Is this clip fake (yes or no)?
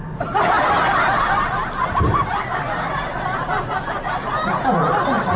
no